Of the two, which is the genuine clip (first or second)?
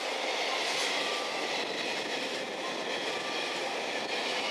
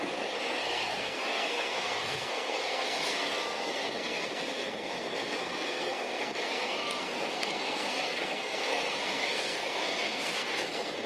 first